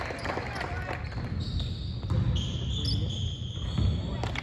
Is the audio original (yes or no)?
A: yes